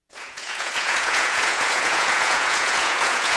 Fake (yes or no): yes